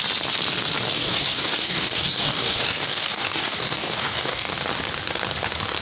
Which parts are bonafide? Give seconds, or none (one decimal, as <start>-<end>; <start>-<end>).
0.0-1.0; 4.5-5.8